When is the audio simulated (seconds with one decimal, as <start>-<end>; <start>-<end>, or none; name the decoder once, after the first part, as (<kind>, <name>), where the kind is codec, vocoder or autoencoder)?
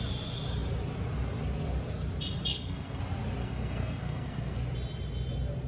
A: 2.5-3.0 (codec, SNAC); 3.4-4.6